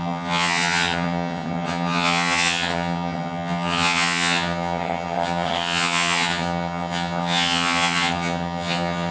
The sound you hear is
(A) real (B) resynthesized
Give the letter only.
B